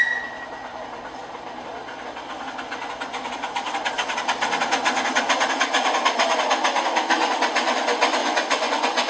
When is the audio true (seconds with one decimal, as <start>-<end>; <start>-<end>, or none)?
0.0-8.2